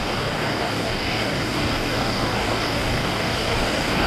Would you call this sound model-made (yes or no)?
yes